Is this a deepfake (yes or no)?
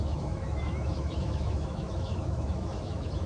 yes